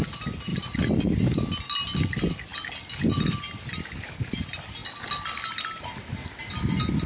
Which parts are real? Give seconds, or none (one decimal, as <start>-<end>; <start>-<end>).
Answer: 0.0-0.5; 1.2-2.5; 4.3-4.8; 5.5-7.1